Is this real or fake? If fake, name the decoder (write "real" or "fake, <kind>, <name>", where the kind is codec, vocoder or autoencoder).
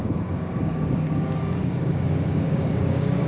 fake, codec, DAC